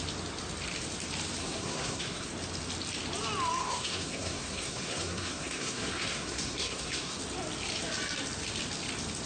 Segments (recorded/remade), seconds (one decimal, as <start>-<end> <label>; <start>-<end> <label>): 0.0-1.4 recorded; 1.4-2.3 remade; 2.3-3.6 recorded; 3.6-7.2 remade; 7.2-9.3 recorded